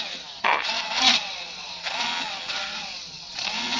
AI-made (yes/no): yes